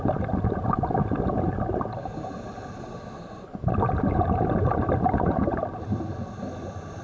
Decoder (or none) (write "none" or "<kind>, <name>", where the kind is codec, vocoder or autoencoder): vocoder, BigVGAN v2